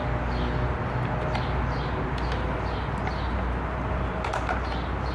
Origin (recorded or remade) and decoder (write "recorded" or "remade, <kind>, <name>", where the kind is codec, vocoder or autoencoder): recorded